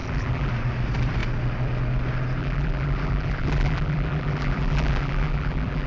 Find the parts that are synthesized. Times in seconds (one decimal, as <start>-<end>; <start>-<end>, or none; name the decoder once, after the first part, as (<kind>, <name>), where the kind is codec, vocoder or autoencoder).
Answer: 0.0-0.5 (vocoder, BigVGAN v2); 2.4-5.9